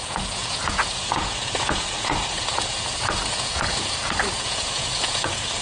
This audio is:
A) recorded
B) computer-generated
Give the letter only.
B